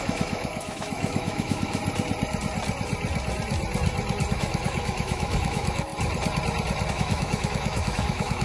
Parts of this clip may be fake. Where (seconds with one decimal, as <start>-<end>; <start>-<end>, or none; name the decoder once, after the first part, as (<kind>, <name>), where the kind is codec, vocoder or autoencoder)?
0.0-1.8 (autoencoder, DAC-VAE); 4.3-5.9; 6.9-8.4